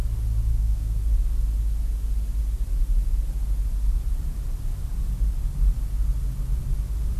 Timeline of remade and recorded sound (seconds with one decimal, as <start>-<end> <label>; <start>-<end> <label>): 0.0-0.5 recorded; 0.5-1.0 remade; 1.0-7.2 recorded